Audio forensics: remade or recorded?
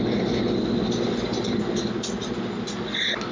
recorded